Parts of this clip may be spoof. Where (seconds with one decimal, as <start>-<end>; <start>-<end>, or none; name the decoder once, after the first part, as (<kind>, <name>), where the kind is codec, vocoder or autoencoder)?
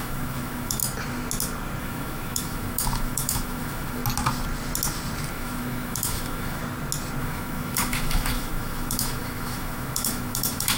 0.0-0.8 (autoencoder, DAC-VAE); 1.8-4.0; 5.3-6.6; 7.2-10.8